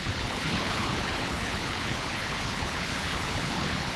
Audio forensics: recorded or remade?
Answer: remade